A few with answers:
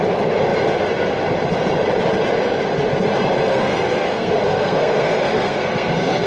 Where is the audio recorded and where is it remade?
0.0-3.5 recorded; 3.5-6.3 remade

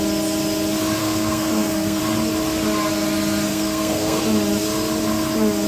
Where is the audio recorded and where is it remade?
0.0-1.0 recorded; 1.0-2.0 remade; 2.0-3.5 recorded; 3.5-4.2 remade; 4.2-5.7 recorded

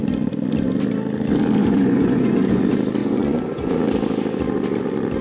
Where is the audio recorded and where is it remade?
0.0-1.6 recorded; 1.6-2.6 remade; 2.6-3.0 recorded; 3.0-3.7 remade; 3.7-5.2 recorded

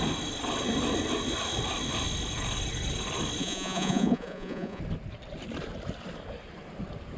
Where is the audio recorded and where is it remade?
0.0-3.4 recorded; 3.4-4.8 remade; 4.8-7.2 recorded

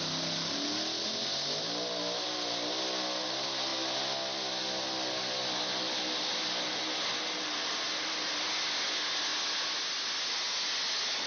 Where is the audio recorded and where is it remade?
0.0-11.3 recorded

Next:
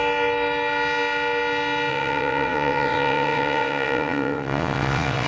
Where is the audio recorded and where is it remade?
0.0-1.9 recorded; 1.9-5.3 remade